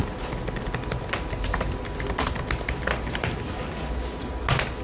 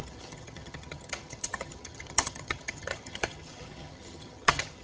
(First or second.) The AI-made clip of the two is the second